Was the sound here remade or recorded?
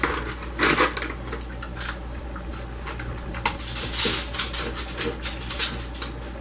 recorded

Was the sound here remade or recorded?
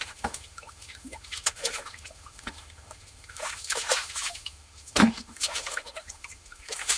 remade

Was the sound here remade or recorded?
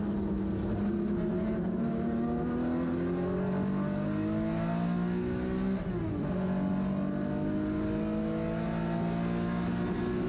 recorded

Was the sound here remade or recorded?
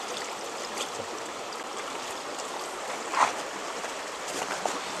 recorded